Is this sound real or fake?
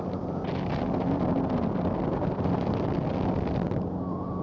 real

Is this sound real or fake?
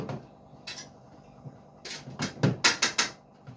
real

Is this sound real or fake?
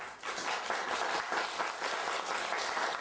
real